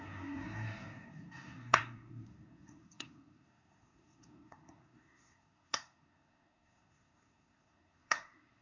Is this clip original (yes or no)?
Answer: no